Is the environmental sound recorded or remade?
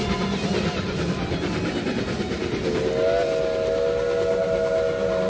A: recorded